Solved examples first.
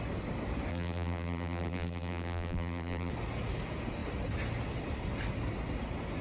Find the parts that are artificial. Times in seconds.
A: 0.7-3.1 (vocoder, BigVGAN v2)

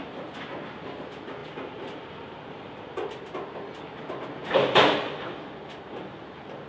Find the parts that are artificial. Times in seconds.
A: 1.4-3.1 (vocoder, BigVGAN v2); 4.4-5.5